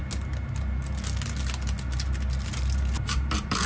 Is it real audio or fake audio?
real